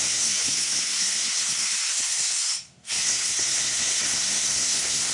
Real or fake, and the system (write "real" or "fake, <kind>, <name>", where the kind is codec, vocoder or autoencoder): fake, codec, SNAC